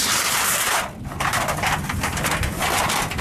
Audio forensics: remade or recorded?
recorded